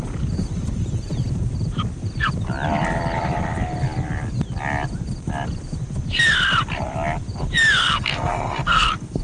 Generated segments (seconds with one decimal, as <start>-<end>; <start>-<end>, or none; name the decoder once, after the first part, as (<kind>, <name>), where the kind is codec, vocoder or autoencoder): 7.8-9.2 (codec, SNAC)